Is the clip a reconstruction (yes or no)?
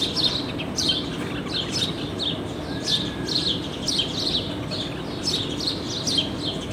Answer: no